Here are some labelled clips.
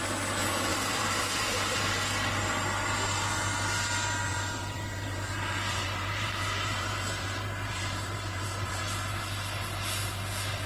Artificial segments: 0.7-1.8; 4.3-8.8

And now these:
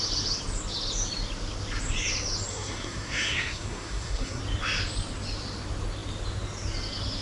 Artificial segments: 2.5-4.4

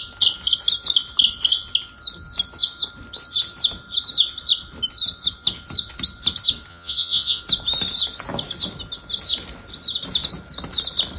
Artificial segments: 6.7-7.4

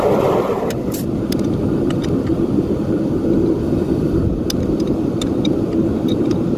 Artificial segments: 2.3-4.2

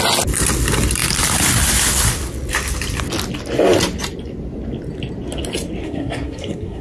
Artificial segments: 5.8-6.8